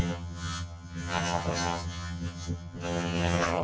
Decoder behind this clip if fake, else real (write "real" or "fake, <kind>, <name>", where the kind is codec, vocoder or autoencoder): fake, vocoder, HiFi-GAN